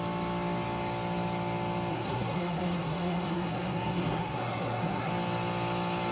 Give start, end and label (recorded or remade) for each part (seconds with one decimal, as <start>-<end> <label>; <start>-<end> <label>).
0.0-1.9 recorded; 1.9-5.1 remade; 5.1-6.1 recorded